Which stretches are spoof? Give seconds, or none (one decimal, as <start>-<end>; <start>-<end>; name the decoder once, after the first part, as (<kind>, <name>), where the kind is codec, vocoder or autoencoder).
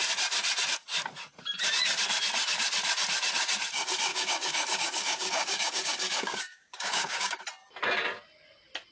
4.1-7.4 (codec, DAC)